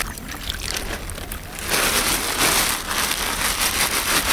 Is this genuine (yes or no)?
yes